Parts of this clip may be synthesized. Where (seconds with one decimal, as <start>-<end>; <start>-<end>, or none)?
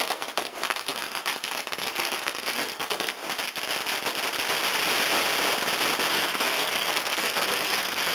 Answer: 0.0-3.2; 6.1-8.1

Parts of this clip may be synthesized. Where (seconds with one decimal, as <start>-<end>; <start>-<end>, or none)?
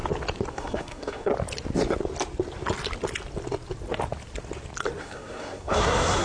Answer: 0.5-1.3; 5.0-6.2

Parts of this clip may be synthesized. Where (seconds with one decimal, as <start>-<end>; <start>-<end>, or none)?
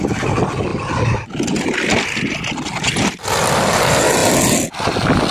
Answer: none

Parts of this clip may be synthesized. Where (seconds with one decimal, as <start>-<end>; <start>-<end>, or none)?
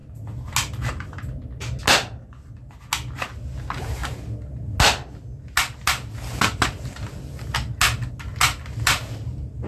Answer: none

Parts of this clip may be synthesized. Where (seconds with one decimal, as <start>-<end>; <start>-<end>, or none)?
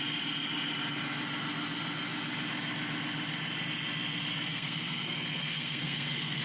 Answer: 4.5-6.4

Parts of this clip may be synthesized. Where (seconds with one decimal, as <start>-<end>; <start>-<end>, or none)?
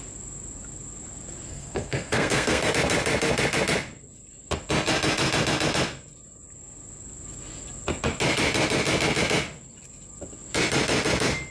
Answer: 1.5-2.7